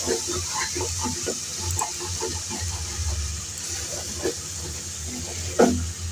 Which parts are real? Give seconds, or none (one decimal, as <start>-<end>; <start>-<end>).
0.0-6.1